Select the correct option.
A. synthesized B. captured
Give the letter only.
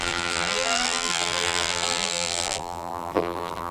A